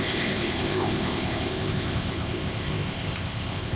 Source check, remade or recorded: remade